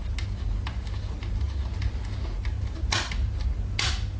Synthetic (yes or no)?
no